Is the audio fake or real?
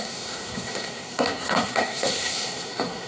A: fake